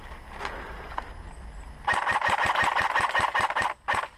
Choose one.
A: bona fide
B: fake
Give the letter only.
A